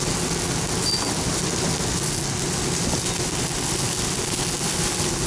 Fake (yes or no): no